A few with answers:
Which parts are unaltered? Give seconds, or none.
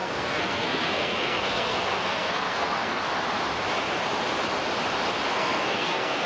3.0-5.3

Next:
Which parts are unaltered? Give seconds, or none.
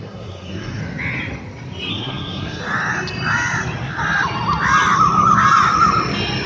0.8-1.9; 2.6-6.5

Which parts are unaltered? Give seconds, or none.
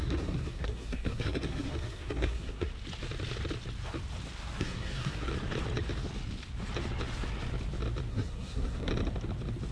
2.7-4.6; 5.3-8.1; 8.9-9.7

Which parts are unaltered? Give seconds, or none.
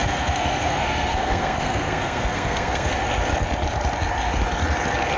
2.9-5.2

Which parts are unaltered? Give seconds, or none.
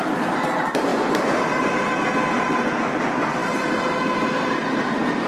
0.0-5.3